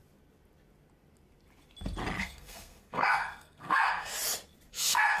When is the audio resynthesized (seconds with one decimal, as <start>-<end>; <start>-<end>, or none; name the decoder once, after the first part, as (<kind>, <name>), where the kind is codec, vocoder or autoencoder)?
2.2-4.1 (codec, SNAC); 4.7-5.2